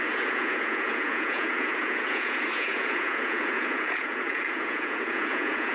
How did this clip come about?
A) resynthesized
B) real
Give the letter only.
A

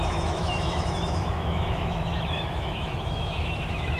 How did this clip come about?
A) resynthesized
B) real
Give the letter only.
A